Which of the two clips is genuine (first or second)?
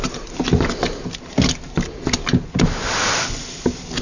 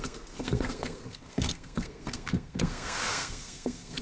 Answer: first